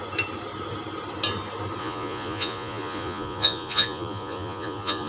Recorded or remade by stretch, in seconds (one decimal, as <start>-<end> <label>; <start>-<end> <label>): 0.0-1.8 recorded; 1.8-5.1 remade